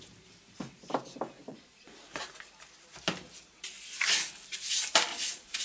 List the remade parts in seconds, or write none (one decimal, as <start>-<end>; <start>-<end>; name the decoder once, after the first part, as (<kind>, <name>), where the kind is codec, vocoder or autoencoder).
1.5-2.1 (vocoder, Vocos); 5.1-5.6